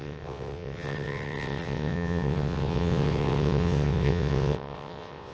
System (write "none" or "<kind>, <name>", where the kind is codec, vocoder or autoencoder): vocoder, WaveNeXt